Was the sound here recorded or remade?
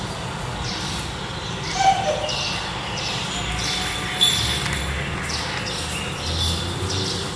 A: recorded